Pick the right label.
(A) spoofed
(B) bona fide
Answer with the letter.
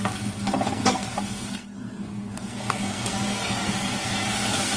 A